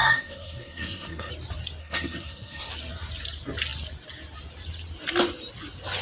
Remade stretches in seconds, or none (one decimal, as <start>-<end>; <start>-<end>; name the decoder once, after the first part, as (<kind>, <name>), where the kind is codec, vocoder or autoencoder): 0.0-1.3 (codec, SNAC); 1.8-2.7

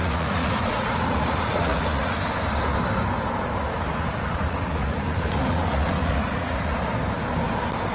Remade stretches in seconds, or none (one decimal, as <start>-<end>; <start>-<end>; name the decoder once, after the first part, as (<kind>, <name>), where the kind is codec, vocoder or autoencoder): 0.0-2.2 (vocoder, Vocos); 3.9-6.8